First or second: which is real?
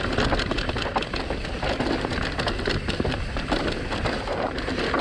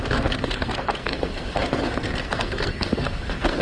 first